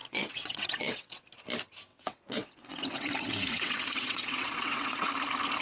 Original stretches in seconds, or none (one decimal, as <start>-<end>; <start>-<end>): 1.2-1.9; 5.1-5.6